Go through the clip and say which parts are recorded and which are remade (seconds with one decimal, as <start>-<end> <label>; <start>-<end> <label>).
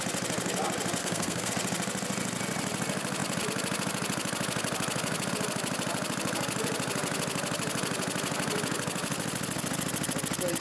0.0-1.0 recorded; 1.0-1.5 remade; 1.5-10.6 recorded